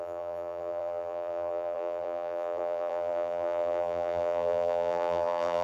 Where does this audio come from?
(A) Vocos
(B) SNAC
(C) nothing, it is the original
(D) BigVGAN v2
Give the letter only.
D